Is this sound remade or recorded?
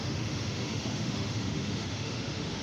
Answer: remade